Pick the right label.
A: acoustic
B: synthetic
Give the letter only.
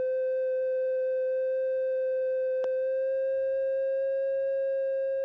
B